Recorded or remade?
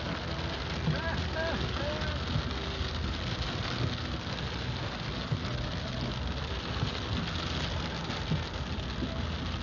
recorded